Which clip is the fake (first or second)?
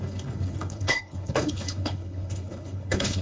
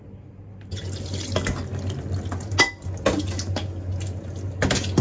first